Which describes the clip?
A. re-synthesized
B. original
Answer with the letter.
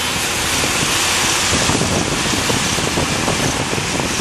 B